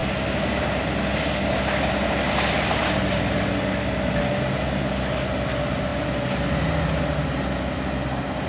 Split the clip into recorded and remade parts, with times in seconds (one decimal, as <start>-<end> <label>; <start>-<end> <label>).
0.0-8.5 recorded